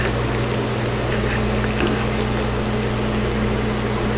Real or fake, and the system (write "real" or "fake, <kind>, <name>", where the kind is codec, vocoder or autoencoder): real